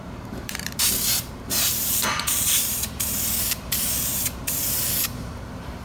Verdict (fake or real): fake